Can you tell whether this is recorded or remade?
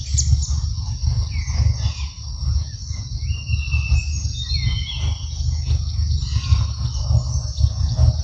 recorded